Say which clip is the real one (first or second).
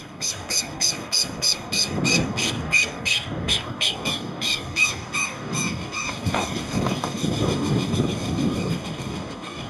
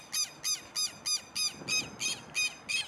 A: second